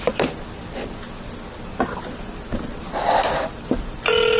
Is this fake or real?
real